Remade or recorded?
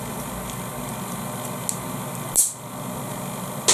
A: recorded